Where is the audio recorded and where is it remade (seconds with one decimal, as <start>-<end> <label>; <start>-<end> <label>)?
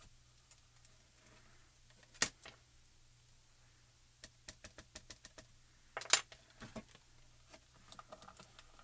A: 0.0-8.8 recorded